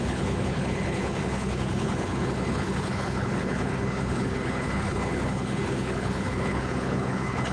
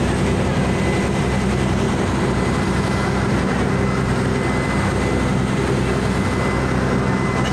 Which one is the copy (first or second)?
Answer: first